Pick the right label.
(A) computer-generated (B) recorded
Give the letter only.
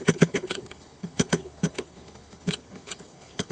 A